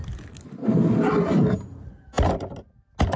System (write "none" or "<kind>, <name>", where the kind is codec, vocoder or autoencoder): none